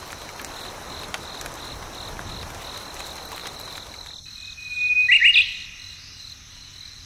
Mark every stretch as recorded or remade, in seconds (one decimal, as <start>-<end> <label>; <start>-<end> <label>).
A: 0.0-3.4 recorded; 3.4-4.2 remade; 4.2-7.1 recorded